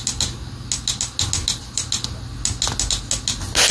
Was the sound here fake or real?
real